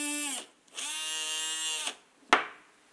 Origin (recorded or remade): recorded